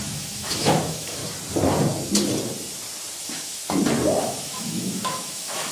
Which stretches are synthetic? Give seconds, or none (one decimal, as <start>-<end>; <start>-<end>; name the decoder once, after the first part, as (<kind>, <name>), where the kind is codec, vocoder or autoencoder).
0.0-1.2 (autoencoder, DAC-VAE); 3.2-3.6; 4.2-5.7